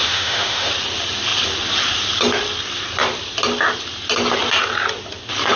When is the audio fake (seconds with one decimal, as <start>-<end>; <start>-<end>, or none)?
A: 0.0-0.7